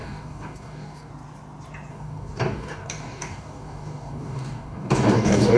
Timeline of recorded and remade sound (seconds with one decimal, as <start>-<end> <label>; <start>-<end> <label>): 0.0-1.1 remade; 1.1-1.9 recorded; 1.9-5.6 remade